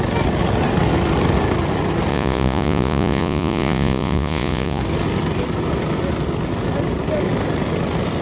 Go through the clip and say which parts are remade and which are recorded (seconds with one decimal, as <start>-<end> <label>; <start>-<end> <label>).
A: 0.0-2.1 recorded; 2.1-4.8 remade; 4.8-8.2 recorded